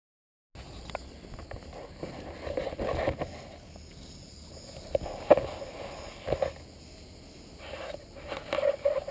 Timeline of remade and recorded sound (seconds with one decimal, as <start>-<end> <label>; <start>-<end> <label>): 0.0-9.1 recorded